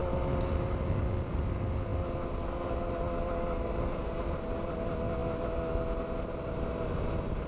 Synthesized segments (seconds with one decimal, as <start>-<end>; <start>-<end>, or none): none